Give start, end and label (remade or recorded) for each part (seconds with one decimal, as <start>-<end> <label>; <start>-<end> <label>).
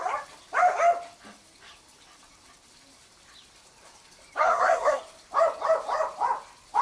0.0-4.4 recorded; 4.4-5.0 remade; 5.0-6.8 recorded